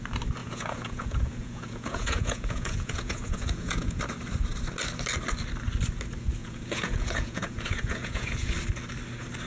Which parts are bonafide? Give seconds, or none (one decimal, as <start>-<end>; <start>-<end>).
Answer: 0.0-0.4; 4.0-6.4; 8.5-9.5